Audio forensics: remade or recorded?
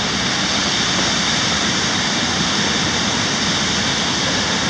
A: recorded